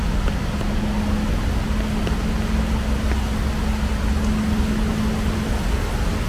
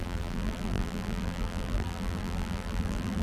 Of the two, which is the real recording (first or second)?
first